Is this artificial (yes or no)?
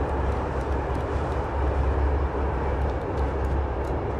no